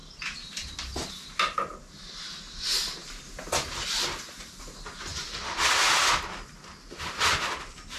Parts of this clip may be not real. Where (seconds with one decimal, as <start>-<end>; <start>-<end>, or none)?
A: 0.0-1.7; 3.0-4.6; 5.1-8.0